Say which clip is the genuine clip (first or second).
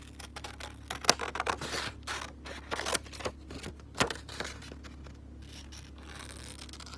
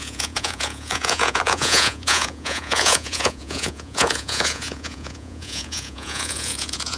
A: first